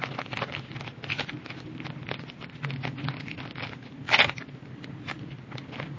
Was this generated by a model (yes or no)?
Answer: no